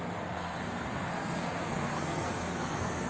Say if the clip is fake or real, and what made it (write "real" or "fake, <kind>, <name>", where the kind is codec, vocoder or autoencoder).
fake, codec, SNAC